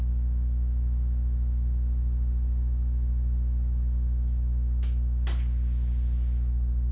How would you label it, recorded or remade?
recorded